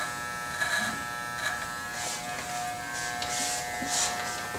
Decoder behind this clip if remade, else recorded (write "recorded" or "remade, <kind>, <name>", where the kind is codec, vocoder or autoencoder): recorded